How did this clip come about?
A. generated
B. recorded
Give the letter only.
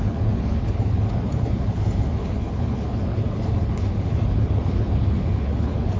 A